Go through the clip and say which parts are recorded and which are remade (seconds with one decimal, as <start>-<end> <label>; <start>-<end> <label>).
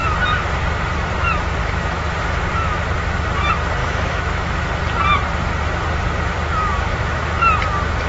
0.0-1.6 recorded; 1.6-2.4 remade; 2.4-3.8 recorded; 3.8-4.7 remade; 4.7-6.9 recorded; 6.9-7.4 remade; 7.4-8.1 recorded